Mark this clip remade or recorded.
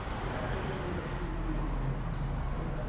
recorded